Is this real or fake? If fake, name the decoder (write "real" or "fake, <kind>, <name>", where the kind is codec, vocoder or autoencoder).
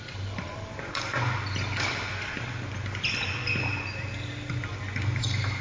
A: real